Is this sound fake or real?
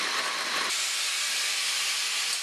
real